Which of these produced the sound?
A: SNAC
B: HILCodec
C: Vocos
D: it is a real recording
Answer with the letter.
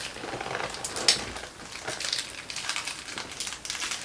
D